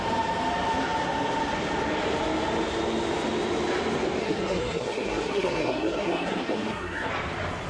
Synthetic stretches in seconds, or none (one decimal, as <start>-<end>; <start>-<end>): 4.2-7.1